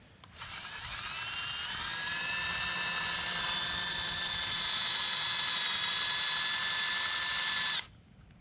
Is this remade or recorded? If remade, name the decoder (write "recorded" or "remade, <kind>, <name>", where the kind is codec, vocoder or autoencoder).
recorded